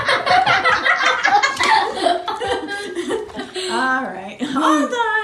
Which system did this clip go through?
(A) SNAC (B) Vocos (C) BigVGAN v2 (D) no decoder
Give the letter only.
D